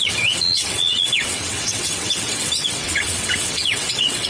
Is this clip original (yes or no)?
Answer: no